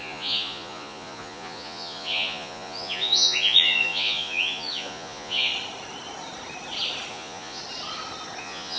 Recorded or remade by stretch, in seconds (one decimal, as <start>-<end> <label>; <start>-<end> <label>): 0.0-5.5 remade; 5.5-7.1 recorded; 7.1-7.6 remade; 7.6-8.4 recorded; 8.4-8.8 remade

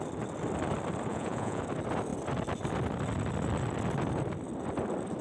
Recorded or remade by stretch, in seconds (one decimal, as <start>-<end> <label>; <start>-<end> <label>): 0.0-1.1 recorded; 1.1-1.6 remade; 1.6-5.2 recorded

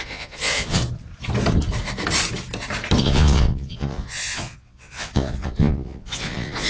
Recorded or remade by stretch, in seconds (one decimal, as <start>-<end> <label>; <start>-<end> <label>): 0.0-0.8 remade; 0.8-3.0 recorded; 3.0-6.7 remade